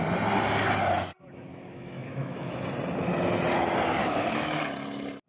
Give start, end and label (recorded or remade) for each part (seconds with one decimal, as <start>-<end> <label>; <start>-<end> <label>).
0.0-1.5 recorded; 1.5-2.5 remade; 2.5-4.0 recorded; 4.0-4.6 remade; 4.6-5.3 recorded